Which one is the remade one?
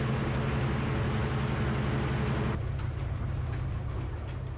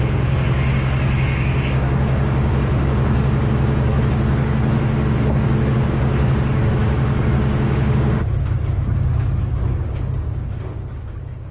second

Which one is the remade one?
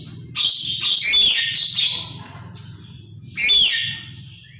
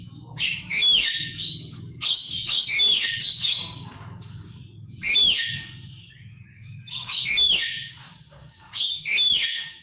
second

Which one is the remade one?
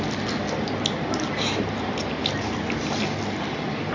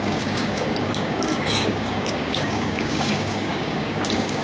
second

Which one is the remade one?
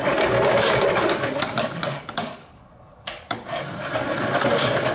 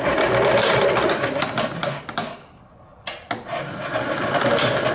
first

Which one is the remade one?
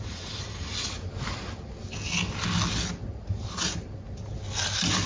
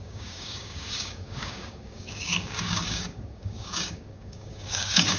second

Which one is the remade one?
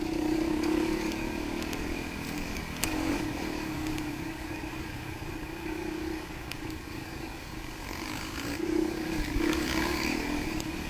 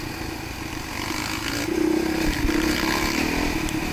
first